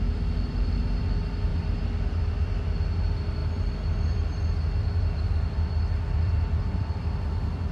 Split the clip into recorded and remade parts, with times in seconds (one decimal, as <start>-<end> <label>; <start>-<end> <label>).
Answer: 0.0-7.7 recorded